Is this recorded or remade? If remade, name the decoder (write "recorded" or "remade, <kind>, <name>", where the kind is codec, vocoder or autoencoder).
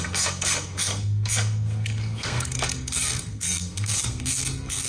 remade, codec, SNAC